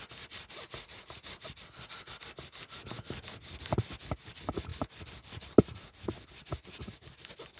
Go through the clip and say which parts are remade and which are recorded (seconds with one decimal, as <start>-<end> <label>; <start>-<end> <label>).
0.0-7.6 recorded